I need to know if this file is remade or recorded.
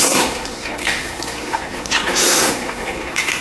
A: remade